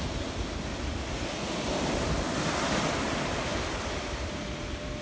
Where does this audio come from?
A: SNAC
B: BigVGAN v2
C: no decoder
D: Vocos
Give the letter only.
C